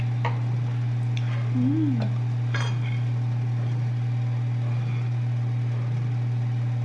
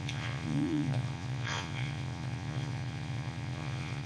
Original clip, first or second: first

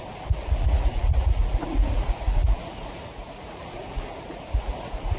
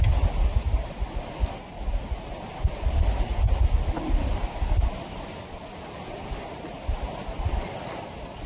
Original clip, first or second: second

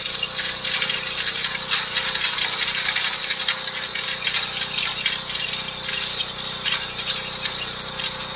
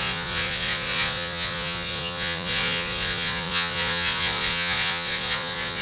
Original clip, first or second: first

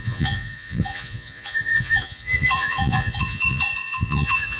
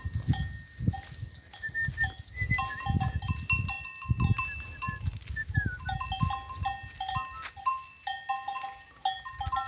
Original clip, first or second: second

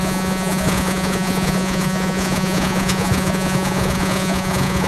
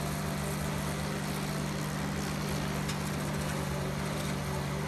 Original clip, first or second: second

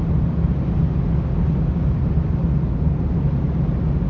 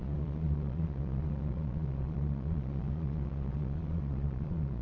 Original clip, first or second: first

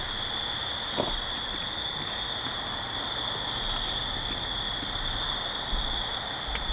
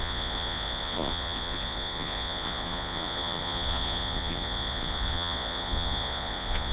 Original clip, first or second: first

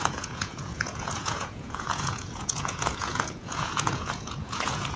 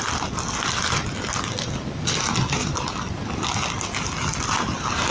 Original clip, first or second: second